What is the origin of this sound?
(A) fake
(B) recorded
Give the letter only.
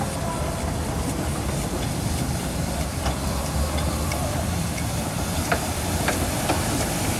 A